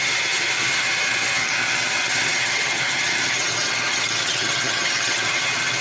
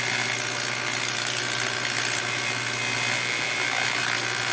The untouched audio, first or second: second